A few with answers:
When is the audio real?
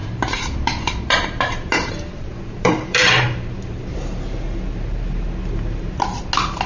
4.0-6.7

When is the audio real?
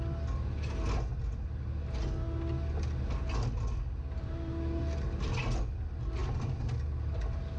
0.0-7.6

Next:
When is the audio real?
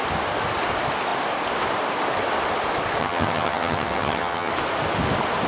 0.0-3.0; 4.5-5.5